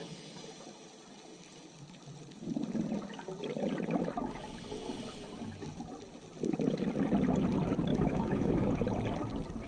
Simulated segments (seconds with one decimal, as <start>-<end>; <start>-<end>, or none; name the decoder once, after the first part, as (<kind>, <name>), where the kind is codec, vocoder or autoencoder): 7.9-8.7 (autoencoder, DAC-VAE)